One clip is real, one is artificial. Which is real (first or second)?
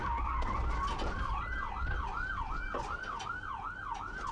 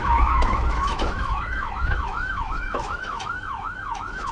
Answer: first